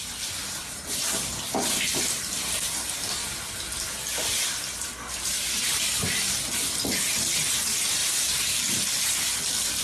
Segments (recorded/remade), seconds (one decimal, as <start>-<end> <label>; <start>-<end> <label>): 0.0-8.0 recorded; 8.0-8.6 remade; 8.6-9.8 recorded